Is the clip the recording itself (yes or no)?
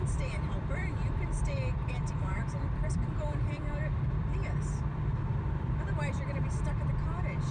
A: no